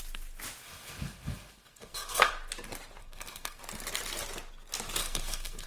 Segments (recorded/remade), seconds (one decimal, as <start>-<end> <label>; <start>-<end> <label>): 0.0-0.6 recorded; 0.6-2.3 remade; 2.3-3.0 recorded; 3.0-3.6 remade; 3.6-5.0 recorded; 5.0-5.7 remade

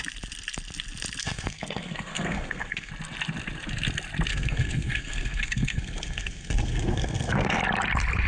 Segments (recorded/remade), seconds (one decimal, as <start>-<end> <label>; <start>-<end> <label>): 0.0-1.2 recorded; 1.2-2.9 remade; 2.9-4.3 recorded; 4.3-7.6 remade; 7.6-8.3 recorded

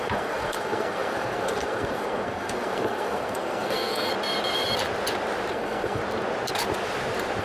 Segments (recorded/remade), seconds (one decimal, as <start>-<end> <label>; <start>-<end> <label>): 0.0-4.1 remade; 4.1-5.5 recorded; 5.5-6.0 remade; 6.0-7.4 recorded

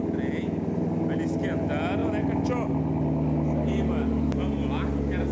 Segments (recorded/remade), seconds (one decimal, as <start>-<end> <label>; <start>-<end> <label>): 0.0-5.3 recorded

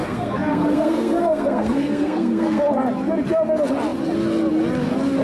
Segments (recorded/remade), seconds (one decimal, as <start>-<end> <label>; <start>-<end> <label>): 0.0-2.6 remade; 2.6-5.2 recorded

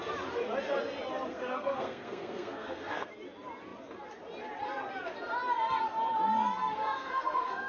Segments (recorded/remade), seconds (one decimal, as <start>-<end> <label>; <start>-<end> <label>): 0.0-1.3 recorded; 1.3-3.1 remade; 3.1-6.6 recorded; 6.6-7.7 remade

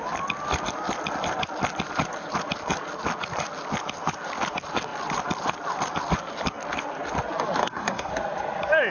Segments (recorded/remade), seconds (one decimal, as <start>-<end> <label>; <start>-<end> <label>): 0.0-7.6 recorded; 7.6-8.1 remade; 8.1-8.9 recorded